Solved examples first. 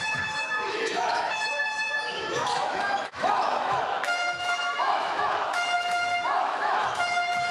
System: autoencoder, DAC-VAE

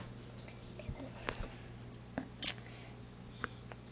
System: none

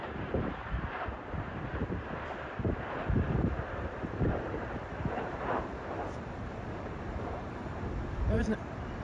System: vocoder, BigVGAN v2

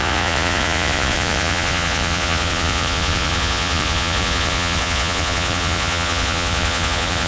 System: vocoder, Vocos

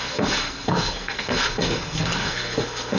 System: codec, SNAC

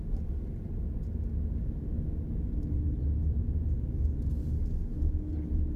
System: none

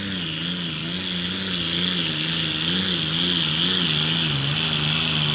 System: none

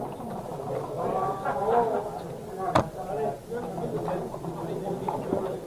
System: none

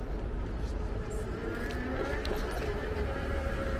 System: none